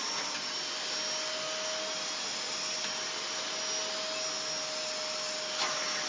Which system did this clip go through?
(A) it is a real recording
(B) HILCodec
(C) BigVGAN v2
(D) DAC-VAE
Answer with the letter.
A